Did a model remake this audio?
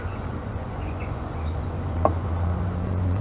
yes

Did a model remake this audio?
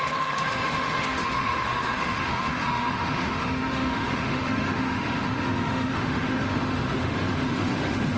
yes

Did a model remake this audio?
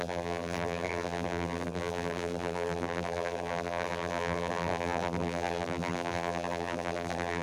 yes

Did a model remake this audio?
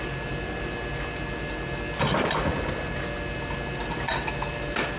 no